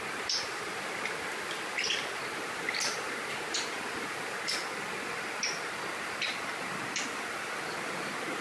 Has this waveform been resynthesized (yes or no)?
no